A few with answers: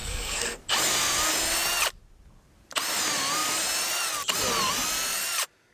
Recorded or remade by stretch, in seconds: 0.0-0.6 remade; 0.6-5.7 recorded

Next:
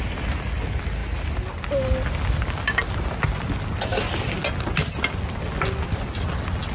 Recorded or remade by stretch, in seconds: 0.0-6.7 recorded